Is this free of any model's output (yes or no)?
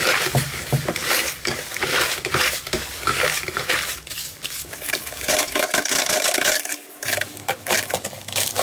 no